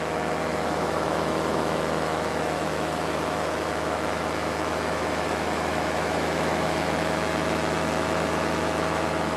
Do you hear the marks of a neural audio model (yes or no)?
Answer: yes